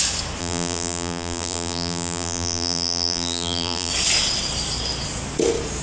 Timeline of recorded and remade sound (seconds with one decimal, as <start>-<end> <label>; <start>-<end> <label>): 0.0-0.4 recorded; 0.4-3.9 remade; 3.9-5.8 recorded